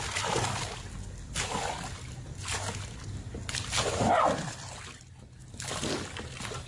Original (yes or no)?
yes